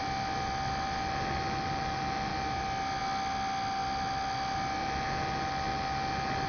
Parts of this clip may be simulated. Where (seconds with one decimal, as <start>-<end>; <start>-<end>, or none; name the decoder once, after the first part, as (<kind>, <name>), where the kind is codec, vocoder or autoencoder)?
none